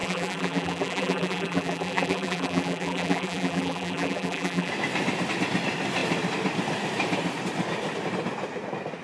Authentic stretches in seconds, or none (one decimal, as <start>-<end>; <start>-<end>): 4.7-9.0